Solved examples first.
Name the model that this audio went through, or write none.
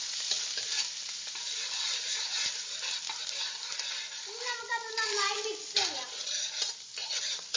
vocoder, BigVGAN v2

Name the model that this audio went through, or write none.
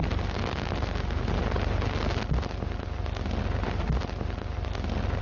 none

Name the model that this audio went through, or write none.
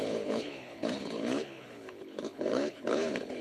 codec, HILCodec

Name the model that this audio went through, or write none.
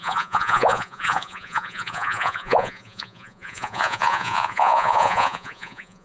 vocoder, Vocos